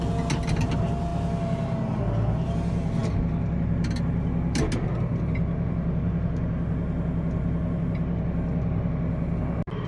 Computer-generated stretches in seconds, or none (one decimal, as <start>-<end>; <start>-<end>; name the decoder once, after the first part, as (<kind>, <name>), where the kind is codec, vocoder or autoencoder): none